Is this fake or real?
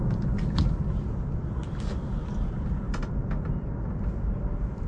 real